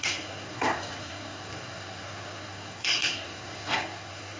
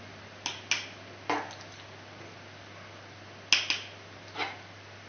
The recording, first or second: second